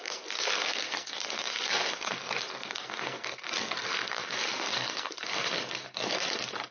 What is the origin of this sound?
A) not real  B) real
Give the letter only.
A